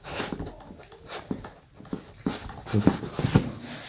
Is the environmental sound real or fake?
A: real